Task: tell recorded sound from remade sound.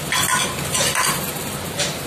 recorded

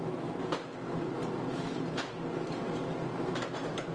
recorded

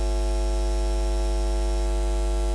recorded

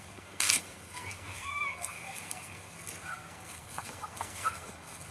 remade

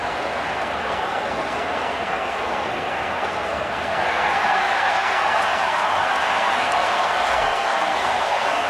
remade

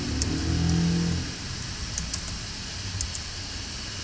recorded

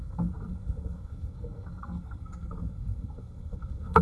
remade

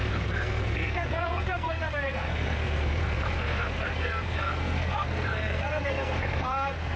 remade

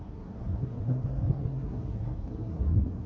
remade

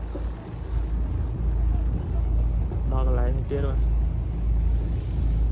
recorded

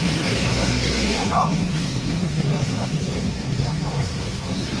remade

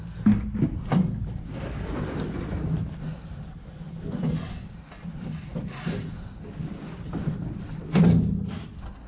recorded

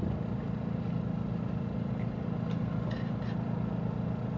recorded